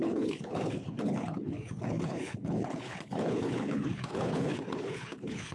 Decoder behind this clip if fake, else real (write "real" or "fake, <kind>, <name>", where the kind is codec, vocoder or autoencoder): fake, codec, HILCodec